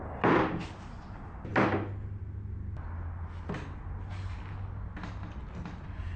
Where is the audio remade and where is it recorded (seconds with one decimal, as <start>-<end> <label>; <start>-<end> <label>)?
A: 0.0-6.2 recorded